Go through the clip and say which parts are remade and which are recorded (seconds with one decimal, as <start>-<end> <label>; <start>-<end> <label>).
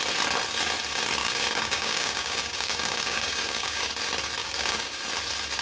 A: 0.0-1.2 recorded; 1.2-3.9 remade; 3.9-4.4 recorded; 4.4-5.0 remade; 5.0-5.6 recorded